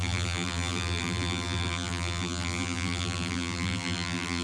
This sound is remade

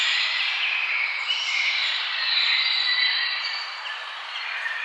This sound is remade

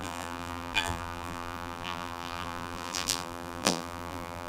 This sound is remade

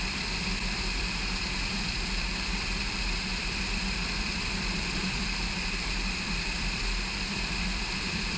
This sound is remade